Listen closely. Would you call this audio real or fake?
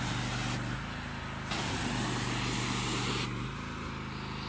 real